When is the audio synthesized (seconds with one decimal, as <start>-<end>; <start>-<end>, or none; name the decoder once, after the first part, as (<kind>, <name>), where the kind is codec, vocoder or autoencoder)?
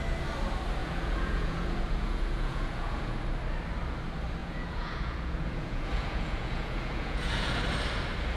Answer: 0.8-3.2 (vocoder, Vocos); 4.4-7.6